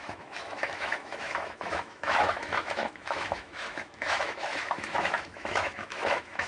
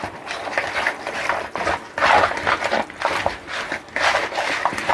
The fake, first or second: first